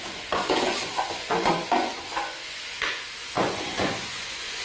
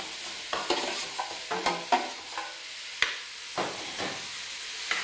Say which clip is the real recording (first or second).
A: second